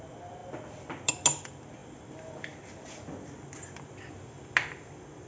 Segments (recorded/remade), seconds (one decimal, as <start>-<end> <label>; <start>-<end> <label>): 0.0-5.3 recorded